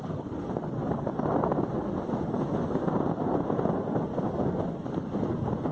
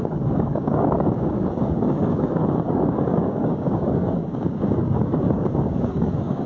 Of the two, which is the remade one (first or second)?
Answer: second